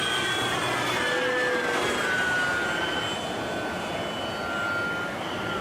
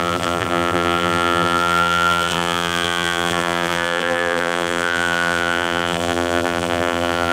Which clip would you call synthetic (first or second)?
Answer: second